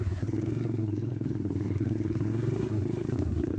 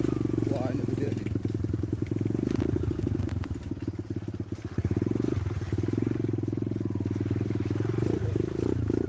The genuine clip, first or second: second